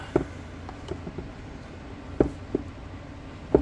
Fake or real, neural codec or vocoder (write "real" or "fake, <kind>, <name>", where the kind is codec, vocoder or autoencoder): real